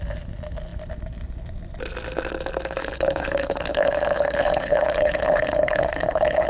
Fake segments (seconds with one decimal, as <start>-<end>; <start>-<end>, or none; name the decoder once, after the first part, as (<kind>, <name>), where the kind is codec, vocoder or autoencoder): 2.8-6.5 (codec, HILCodec)